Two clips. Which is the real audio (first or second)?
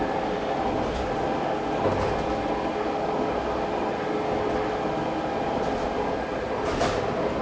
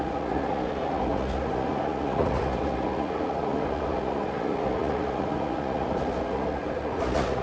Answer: first